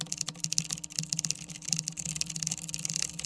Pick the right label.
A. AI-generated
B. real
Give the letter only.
B